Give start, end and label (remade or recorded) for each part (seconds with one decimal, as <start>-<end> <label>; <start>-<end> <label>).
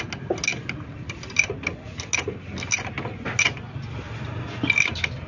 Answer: 0.0-5.3 recorded